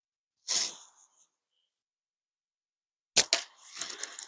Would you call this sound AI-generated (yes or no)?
no